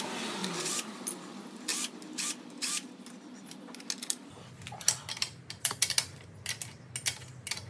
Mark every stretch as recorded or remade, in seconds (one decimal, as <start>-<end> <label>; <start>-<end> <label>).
0.0-7.7 recorded